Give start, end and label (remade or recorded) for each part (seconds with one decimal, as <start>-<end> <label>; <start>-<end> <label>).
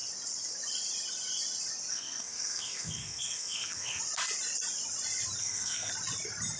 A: 0.0-1.9 recorded; 1.9-4.0 remade; 4.0-5.4 recorded; 5.4-5.9 remade; 5.9-6.6 recorded